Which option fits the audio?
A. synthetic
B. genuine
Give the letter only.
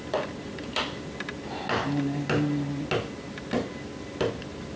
B